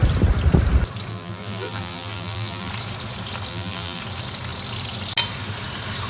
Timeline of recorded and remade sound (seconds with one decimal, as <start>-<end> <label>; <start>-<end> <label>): 0.0-1.1 recorded; 1.1-2.7 remade; 2.7-3.5 recorded; 3.5-4.0 remade; 4.0-6.1 recorded